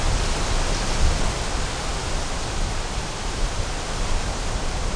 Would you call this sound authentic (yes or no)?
yes